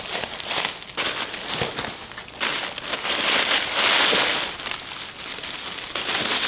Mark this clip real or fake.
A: real